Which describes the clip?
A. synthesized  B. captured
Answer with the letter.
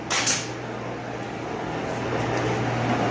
B